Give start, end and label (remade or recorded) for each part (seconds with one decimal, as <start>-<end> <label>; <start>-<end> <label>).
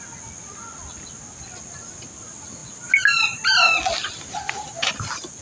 0.0-5.4 recorded